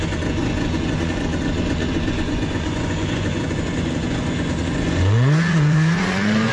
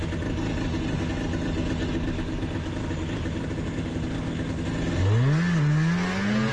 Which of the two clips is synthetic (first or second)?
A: first